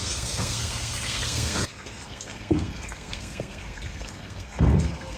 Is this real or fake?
fake